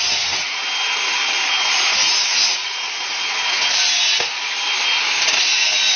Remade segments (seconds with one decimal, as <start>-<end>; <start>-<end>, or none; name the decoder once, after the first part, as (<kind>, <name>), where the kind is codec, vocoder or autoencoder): 2.6-3.2 (vocoder, Vocos)